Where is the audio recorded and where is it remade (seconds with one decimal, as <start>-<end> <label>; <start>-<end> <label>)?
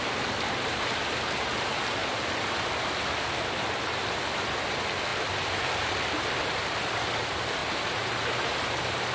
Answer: 0.0-5.1 recorded; 5.1-5.9 remade; 5.9-7.6 recorded; 7.6-8.6 remade; 8.6-9.1 recorded